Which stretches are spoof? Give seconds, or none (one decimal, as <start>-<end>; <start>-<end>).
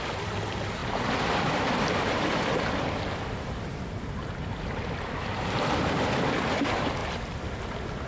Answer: none